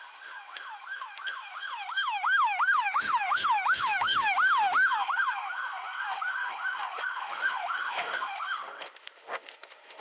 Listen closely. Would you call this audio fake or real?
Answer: fake